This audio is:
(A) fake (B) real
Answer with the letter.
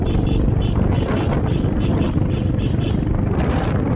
B